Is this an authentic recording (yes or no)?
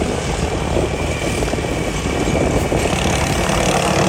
yes